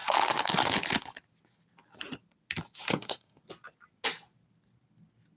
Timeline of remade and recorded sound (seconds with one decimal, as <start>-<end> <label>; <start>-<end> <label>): 0.0-2.8 recorded; 2.8-3.4 remade; 3.4-5.4 recorded